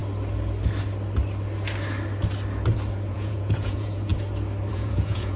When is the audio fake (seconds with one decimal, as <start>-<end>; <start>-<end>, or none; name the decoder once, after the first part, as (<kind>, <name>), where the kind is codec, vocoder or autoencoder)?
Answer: 2.9-4.1 (vocoder, Vocos); 4.7-5.4